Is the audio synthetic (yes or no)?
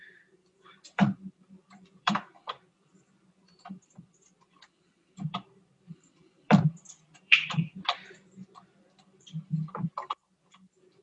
yes